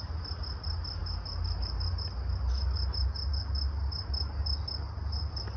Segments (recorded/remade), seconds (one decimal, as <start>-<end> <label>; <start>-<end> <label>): 0.0-5.6 recorded